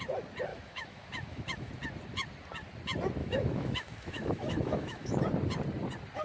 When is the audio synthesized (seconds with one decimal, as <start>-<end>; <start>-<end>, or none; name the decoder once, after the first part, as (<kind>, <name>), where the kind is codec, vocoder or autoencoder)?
0.5-1.7 (autoencoder, DAC-VAE); 3.2-5.2